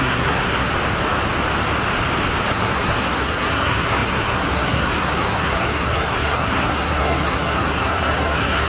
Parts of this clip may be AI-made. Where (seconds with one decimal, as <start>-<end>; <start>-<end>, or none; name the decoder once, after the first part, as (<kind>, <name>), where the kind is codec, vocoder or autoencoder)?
0.0-0.7 (codec, SNAC); 2.5-8.7